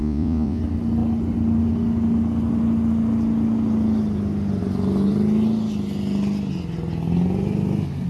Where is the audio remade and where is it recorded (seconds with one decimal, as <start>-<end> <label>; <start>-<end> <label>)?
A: 0.0-0.6 remade; 0.6-8.1 recorded